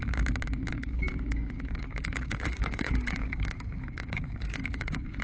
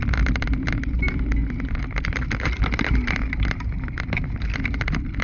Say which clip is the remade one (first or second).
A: first